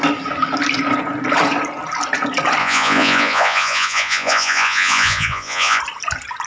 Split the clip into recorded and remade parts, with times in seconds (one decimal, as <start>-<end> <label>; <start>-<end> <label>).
0.0-2.6 recorded; 2.6-5.8 remade; 5.8-6.5 recorded